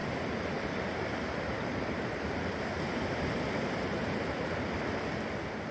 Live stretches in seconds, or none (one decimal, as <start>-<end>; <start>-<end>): 3.4-3.9; 4.8-5.7